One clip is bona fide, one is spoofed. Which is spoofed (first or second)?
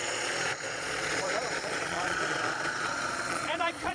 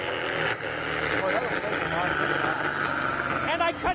first